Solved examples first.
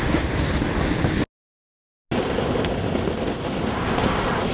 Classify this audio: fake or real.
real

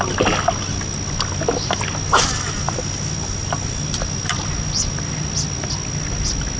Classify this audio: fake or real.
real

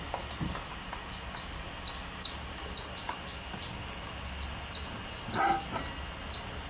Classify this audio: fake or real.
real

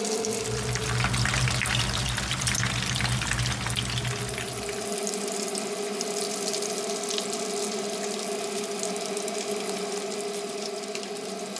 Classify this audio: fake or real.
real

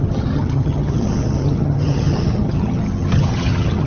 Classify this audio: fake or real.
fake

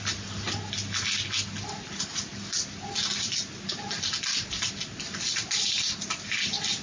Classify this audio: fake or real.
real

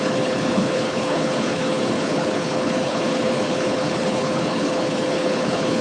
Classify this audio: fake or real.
fake